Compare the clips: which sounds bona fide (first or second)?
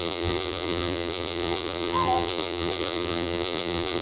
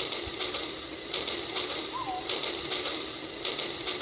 second